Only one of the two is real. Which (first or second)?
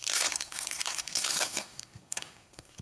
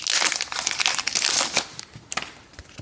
second